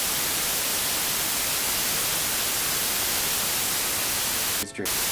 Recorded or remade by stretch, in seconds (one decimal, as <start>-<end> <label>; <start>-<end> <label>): 0.0-5.1 recorded